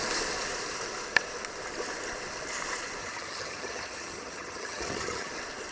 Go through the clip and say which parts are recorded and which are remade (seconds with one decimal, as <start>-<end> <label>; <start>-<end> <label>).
0.0-3.0 recorded; 3.0-5.3 remade; 5.3-5.7 recorded